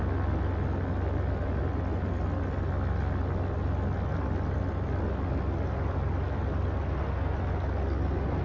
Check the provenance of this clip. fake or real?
real